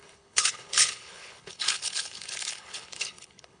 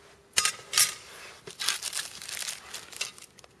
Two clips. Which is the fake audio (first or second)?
first